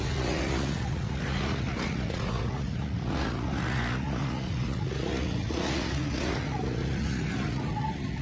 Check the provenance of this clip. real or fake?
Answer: fake